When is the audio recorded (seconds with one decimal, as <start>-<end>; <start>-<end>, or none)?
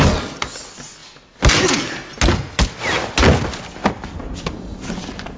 0.0-5.4